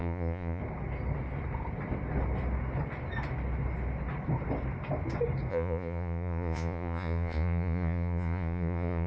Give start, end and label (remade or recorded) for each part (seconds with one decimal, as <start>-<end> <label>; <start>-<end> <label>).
0.0-0.6 remade; 0.6-5.5 recorded; 5.5-9.1 remade